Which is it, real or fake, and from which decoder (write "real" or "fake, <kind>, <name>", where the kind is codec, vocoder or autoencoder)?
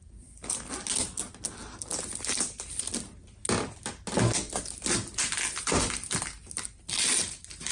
real